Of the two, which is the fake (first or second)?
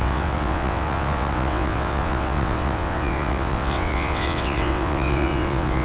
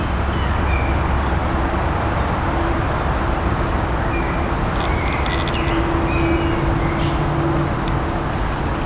first